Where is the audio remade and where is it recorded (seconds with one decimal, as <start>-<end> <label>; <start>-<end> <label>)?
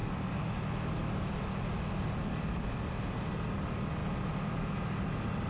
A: 0.0-5.5 recorded